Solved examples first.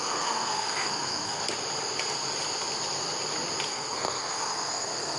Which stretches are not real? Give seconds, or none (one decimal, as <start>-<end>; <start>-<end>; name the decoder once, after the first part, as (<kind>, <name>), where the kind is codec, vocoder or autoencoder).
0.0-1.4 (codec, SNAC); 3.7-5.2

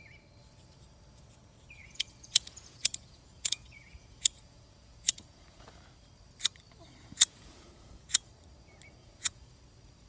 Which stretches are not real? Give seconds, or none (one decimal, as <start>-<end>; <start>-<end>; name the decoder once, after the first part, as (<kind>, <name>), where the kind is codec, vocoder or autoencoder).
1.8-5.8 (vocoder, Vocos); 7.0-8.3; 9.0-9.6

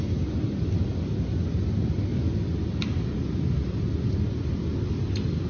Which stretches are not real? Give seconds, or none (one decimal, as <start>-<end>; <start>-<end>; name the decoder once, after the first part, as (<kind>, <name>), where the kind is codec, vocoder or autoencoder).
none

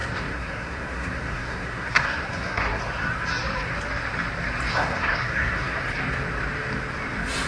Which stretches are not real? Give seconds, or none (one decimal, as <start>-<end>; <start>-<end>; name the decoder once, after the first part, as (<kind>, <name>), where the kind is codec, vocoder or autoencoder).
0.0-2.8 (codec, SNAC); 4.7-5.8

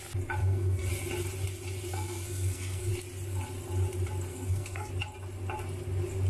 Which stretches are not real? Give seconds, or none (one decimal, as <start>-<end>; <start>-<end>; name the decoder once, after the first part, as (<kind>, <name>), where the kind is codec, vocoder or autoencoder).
0.4-0.9 (codec, SNAC); 1.9-2.9; 4.3-4.9